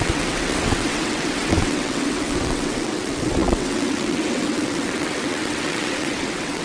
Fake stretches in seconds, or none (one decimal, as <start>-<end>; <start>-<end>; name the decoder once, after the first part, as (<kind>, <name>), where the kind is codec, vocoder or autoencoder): 0.0-6.6 (vocoder, WaveNeXt)